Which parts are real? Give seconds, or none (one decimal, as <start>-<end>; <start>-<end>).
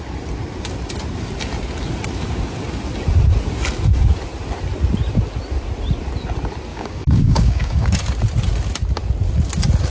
0.0-6.7; 8.0-9.9